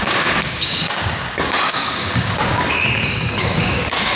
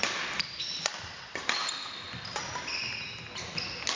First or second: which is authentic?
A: second